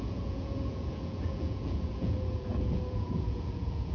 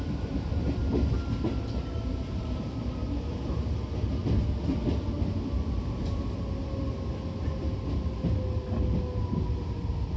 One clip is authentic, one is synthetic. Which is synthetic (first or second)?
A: first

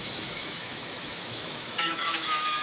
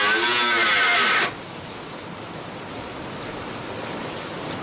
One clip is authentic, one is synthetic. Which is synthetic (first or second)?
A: first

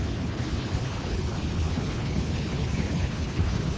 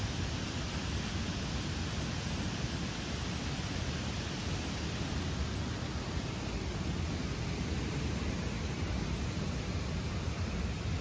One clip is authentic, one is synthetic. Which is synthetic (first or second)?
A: first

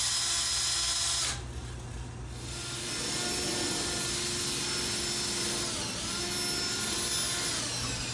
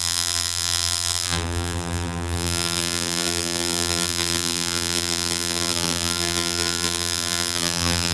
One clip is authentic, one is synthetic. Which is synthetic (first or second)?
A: second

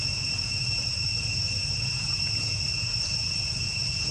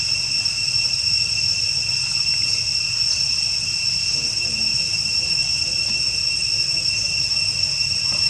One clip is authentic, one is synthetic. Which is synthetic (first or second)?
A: first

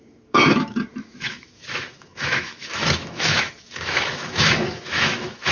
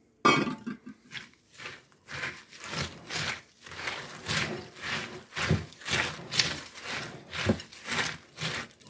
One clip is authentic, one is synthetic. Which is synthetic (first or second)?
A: first